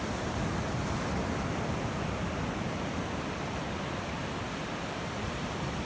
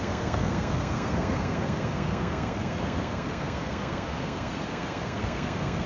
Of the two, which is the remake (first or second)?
second